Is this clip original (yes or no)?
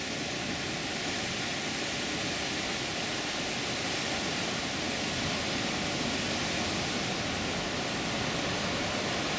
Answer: yes